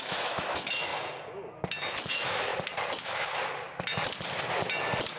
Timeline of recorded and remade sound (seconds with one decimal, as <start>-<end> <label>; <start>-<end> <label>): 0.0-0.9 remade; 0.9-2.1 recorded; 2.1-2.5 remade; 2.5-3.0 recorded; 3.0-3.4 remade; 3.4-5.2 recorded